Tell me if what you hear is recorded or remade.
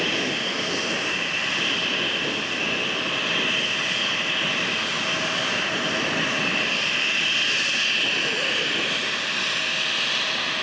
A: recorded